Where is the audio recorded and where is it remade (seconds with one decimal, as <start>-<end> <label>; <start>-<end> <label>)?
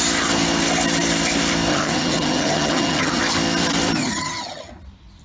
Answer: 0.0-1.7 recorded; 1.7-3.2 remade; 3.2-4.0 recorded; 4.0-4.7 remade; 4.7-5.2 recorded